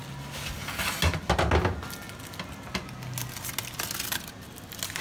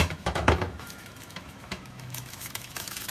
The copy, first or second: second